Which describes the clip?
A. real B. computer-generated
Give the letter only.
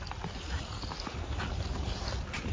A